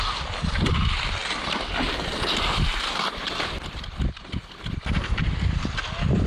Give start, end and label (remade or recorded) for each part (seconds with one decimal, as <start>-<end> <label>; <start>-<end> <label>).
0.0-6.3 recorded